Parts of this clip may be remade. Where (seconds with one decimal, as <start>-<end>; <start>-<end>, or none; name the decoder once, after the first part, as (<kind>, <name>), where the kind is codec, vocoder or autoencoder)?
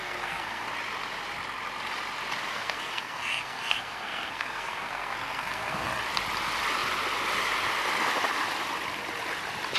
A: 0.0-0.7 (codec, SNAC); 2.5-5.9